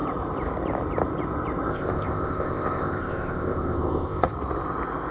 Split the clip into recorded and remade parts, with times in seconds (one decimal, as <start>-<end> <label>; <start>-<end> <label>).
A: 0.0-1.7 recorded; 1.7-4.3 remade; 4.3-5.1 recorded